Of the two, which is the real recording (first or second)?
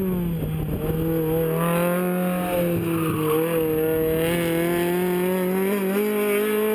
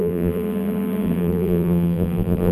first